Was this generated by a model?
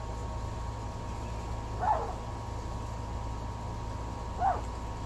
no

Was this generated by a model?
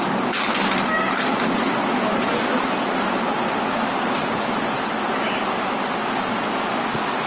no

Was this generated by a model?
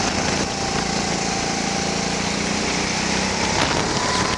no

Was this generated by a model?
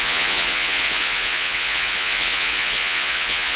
yes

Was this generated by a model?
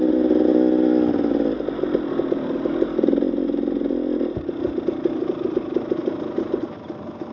no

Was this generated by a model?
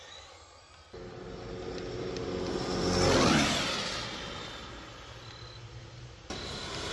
no